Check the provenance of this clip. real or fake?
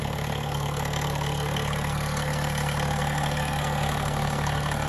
fake